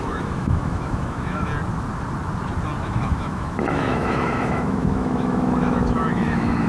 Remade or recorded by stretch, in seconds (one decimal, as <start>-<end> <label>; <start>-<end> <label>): 0.0-1.5 remade; 1.5-2.8 recorded; 2.8-6.7 remade